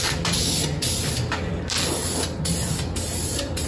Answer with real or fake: real